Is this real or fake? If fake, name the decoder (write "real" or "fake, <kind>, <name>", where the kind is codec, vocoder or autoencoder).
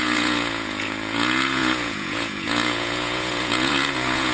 fake, vocoder, Vocos